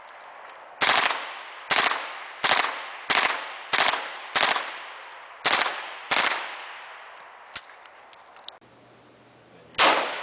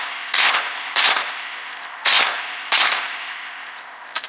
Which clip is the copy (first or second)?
second